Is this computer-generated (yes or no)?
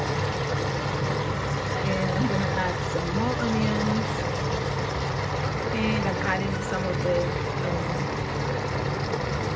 no